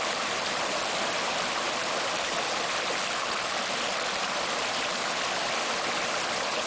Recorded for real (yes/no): yes